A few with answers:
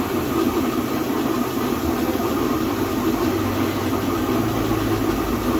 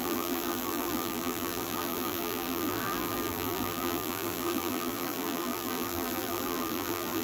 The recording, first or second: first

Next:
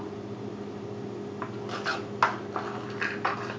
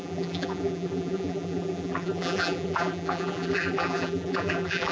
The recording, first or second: first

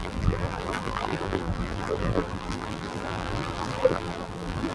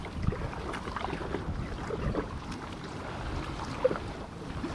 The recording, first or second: second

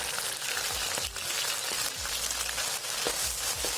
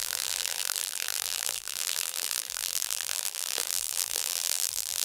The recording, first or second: first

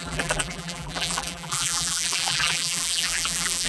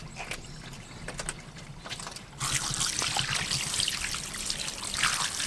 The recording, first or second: second